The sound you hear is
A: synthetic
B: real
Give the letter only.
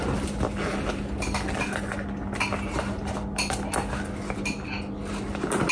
B